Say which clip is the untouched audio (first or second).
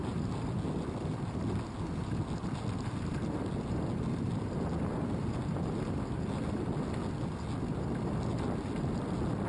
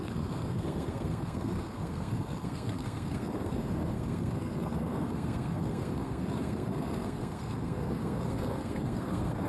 first